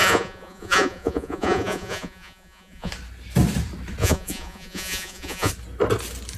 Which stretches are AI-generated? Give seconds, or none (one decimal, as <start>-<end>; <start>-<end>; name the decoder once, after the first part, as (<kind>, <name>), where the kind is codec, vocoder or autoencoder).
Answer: 0.0-2.9 (vocoder, Vocos); 4.0-5.5